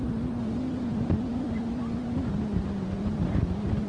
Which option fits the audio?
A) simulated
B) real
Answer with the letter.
B